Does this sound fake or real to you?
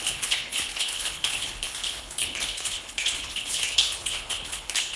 fake